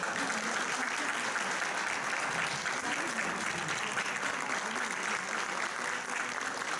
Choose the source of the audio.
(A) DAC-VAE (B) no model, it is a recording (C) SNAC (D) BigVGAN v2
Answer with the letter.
B